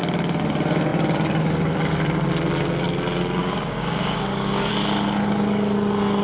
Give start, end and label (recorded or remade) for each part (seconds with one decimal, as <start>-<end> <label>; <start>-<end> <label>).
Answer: 0.0-3.4 recorded; 3.4-4.7 remade; 4.7-6.2 recorded